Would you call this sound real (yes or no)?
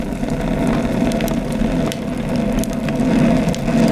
yes